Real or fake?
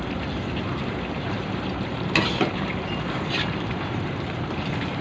fake